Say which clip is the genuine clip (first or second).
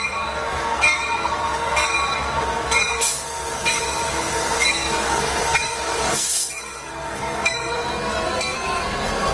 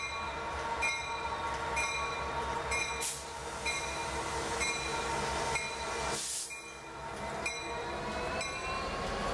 second